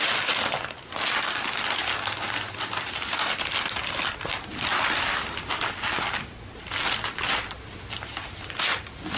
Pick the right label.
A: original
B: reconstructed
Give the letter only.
A